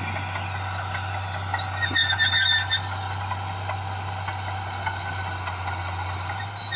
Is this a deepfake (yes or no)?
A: no